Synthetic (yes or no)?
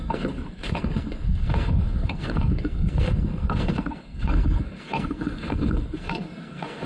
yes